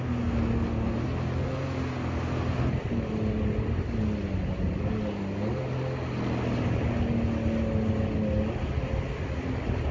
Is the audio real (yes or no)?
yes